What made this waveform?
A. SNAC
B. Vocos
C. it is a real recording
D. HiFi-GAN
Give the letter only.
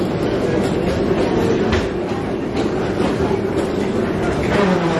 C